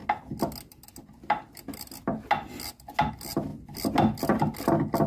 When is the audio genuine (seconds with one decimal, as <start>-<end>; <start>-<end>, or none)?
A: 0.0-5.1